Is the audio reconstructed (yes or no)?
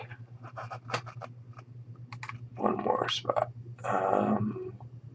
no